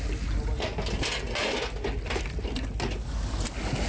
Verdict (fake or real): real